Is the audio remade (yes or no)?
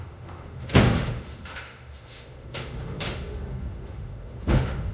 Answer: yes